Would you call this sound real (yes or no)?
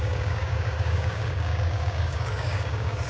no